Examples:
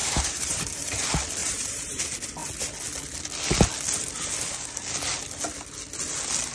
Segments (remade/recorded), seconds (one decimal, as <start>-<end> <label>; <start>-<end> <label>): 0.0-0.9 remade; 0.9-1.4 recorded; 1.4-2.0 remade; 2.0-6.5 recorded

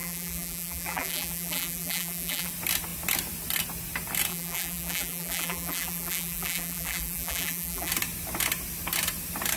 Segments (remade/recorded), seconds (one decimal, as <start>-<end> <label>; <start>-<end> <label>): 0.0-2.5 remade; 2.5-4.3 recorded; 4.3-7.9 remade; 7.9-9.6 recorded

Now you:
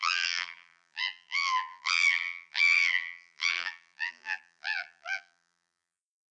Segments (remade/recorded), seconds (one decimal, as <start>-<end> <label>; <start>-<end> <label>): 0.0-6.3 remade

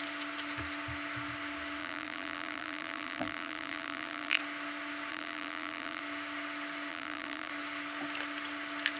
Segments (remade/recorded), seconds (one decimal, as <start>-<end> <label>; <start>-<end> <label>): 0.0-1.8 recorded; 1.8-4.4 remade; 4.4-5.1 recorded; 5.1-6.0 remade; 6.0-6.9 recorded; 6.9-7.5 remade; 7.5-9.0 recorded

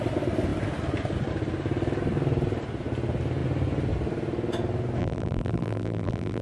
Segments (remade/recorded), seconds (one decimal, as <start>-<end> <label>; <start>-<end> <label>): 0.0-5.0 recorded; 5.0-6.4 remade

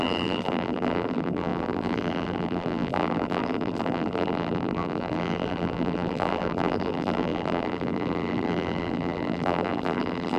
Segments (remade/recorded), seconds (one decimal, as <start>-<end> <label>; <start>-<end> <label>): 0.0-10.4 remade

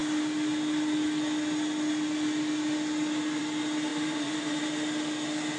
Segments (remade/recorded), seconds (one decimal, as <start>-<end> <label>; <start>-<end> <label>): 0.0-3.9 recorded; 3.9-4.6 remade; 4.6-5.6 recorded

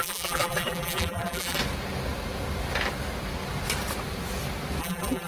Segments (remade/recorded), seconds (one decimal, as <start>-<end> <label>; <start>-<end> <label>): 0.0-1.6 remade; 1.6-4.8 recorded; 4.8-5.3 remade